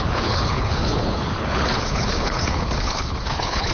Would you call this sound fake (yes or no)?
yes